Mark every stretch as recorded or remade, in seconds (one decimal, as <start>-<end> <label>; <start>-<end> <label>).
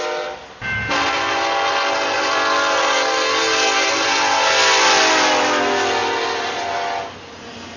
0.0-7.8 recorded